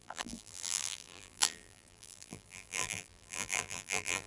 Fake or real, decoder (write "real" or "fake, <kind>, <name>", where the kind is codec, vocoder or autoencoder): fake, vocoder, BigVGAN v2